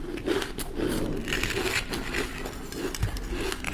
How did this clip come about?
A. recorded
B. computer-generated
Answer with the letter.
A